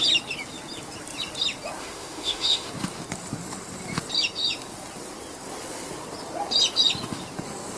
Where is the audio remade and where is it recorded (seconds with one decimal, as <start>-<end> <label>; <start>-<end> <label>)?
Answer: 0.0-1.8 recorded; 1.8-2.7 remade; 2.7-7.8 recorded